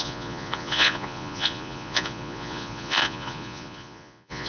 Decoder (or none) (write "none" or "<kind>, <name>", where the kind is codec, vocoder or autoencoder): vocoder, Vocos